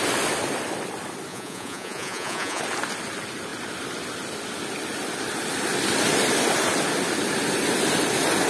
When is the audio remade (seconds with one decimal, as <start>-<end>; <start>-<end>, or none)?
1.3-2.6